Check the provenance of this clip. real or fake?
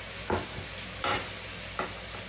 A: real